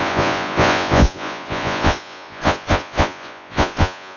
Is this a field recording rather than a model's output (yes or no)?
no